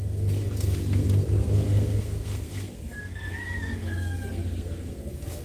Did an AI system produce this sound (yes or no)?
yes